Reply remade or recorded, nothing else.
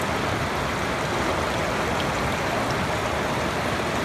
recorded